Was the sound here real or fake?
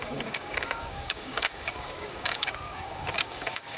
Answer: fake